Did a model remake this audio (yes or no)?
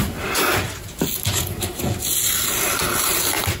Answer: no